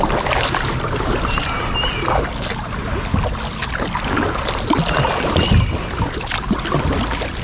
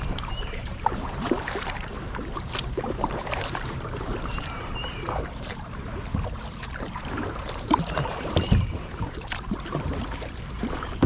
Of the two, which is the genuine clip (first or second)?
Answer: first